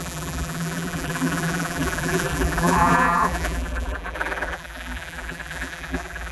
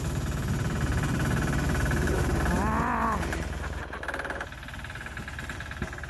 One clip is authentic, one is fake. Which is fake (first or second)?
first